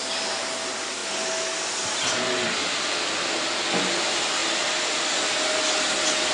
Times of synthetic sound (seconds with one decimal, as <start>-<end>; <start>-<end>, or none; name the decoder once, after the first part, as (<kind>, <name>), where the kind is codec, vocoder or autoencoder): 0.0-1.0 (vocoder, BigVGAN v2); 1.7-4.4; 4.9-6.3